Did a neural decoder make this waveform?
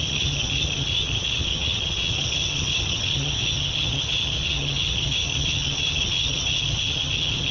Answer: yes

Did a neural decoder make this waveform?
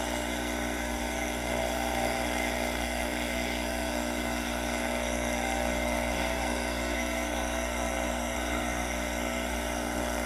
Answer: yes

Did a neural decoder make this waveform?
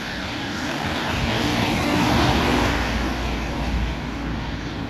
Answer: yes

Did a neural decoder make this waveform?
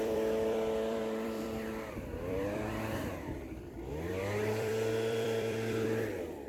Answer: yes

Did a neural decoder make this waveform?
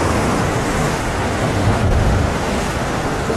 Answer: yes